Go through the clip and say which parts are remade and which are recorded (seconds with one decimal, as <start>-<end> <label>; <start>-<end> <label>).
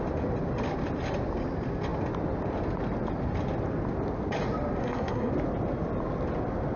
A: 0.0-4.8 recorded; 4.8-5.3 remade; 5.3-6.8 recorded